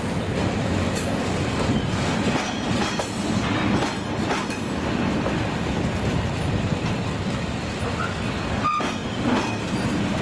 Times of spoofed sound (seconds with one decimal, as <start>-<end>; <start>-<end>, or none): none